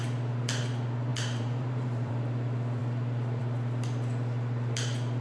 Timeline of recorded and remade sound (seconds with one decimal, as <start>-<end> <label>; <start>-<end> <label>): 0.0-1.1 recorded; 1.1-2.1 remade; 2.1-5.2 recorded

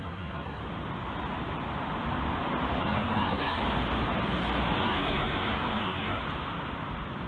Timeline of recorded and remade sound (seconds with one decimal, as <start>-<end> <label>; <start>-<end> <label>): 0.0-0.6 remade; 0.6-2.8 recorded; 2.8-3.6 remade; 3.6-4.8 recorded; 4.8-6.2 remade; 6.2-7.3 recorded

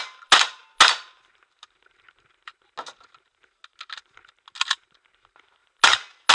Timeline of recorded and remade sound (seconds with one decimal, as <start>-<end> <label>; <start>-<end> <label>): 0.0-6.3 recorded

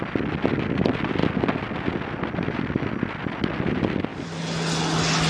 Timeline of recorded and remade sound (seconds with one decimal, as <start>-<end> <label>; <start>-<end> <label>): 0.0-5.3 recorded